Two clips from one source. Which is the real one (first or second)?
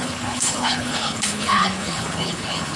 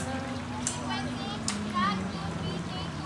second